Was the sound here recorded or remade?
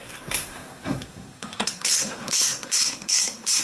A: remade